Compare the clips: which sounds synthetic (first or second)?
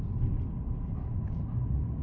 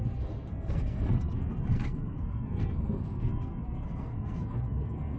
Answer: second